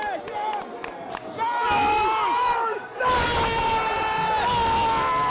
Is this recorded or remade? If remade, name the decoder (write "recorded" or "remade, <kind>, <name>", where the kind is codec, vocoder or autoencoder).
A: recorded